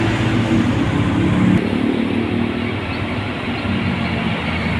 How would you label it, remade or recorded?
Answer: recorded